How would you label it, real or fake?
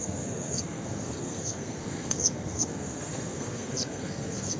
fake